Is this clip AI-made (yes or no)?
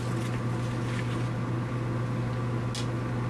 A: no